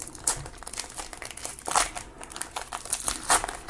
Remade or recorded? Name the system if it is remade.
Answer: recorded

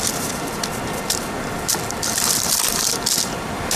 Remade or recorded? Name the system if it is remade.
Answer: remade, vocoder, BigVGAN v2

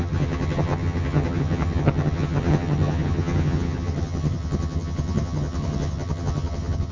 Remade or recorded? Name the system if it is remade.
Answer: remade, vocoder, HiFi-GAN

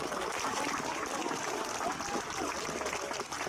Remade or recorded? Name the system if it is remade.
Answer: recorded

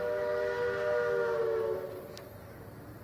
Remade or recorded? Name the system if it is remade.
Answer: recorded